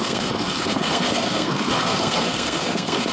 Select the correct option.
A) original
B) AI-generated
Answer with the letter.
B